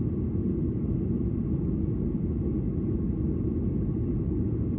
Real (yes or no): yes